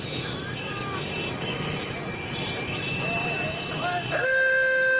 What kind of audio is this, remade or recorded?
remade